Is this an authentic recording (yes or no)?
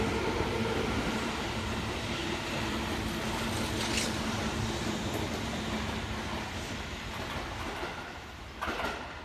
yes